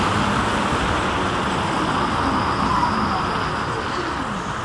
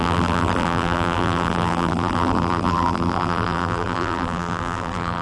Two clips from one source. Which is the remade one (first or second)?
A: second